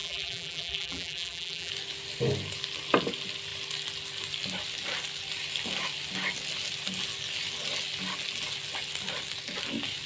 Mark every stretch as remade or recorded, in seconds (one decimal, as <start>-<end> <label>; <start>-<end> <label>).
0.0-1.7 remade; 1.7-10.1 recorded